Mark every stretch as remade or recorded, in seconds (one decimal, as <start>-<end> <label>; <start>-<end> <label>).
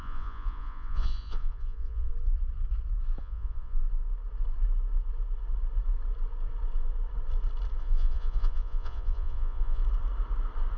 0.0-2.1 remade; 2.1-3.2 recorded; 3.2-3.8 remade; 3.8-7.8 recorded; 7.8-9.8 remade; 9.8-10.8 recorded